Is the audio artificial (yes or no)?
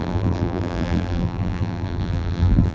yes